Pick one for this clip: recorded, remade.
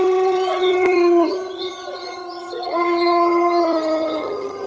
remade